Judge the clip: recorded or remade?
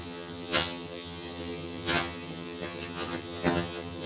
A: remade